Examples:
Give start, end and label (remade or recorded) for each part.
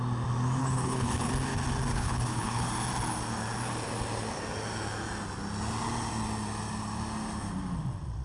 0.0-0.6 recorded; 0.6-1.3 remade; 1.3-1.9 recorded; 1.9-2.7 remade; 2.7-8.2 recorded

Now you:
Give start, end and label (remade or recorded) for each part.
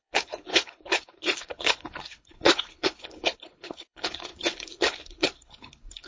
0.0-6.1 remade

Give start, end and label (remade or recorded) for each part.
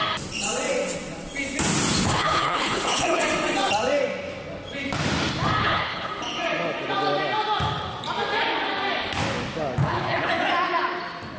0.0-2.1 recorded; 2.1-3.2 remade; 3.2-5.6 recorded; 5.6-6.1 remade; 6.1-9.8 recorded; 9.8-10.3 remade; 10.3-11.4 recorded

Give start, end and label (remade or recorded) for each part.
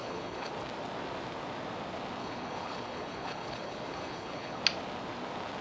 0.0-0.5 remade; 0.5-2.2 recorded; 2.2-4.6 remade; 4.6-5.6 recorded